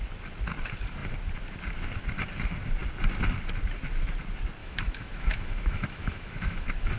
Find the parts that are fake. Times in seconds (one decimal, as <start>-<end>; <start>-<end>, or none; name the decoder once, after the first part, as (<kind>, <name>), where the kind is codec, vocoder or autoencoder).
4.6-7.0 (autoencoder, DAC-VAE)